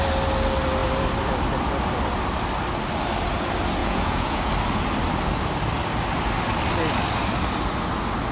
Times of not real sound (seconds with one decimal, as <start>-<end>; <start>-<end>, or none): 3.8-4.5